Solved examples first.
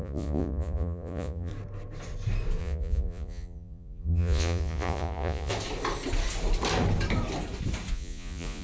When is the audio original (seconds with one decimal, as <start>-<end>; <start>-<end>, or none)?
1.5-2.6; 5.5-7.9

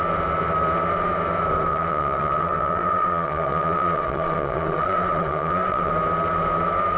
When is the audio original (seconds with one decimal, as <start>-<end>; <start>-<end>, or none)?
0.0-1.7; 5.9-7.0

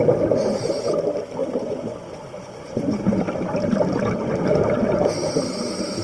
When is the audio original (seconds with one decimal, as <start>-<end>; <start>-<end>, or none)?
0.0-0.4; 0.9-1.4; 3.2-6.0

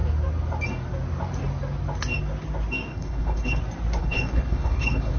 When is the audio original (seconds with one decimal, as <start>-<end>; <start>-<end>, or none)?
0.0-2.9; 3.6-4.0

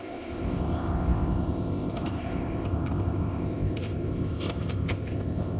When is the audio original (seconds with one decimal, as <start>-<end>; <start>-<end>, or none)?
none

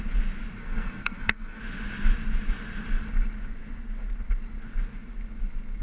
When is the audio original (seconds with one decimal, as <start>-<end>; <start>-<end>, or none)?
0.0-0.6; 1.6-5.8